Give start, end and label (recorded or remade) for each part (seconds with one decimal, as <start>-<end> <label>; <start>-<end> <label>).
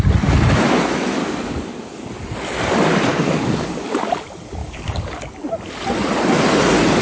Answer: 0.0-1.2 recorded; 1.2-2.1 remade; 2.1-3.1 recorded; 3.1-4.1 remade; 4.1-4.6 recorded; 4.6-5.3 remade; 5.3-7.0 recorded